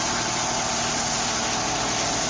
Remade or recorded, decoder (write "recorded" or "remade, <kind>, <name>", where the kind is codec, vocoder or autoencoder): recorded